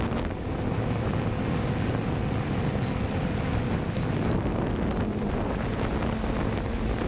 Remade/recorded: recorded